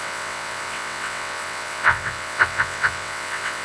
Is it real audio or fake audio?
fake